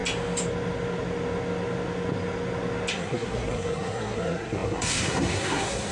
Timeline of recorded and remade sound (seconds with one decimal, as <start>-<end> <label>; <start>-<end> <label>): 0.0-2.9 recorded; 2.9-5.9 remade